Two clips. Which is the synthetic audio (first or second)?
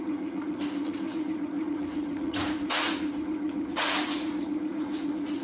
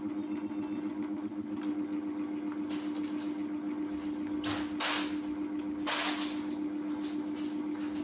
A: first